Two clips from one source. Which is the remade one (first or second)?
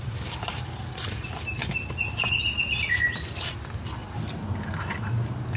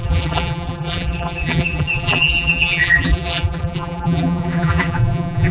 second